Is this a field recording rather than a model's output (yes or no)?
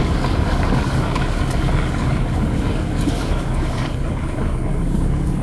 no